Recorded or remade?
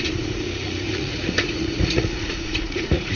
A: remade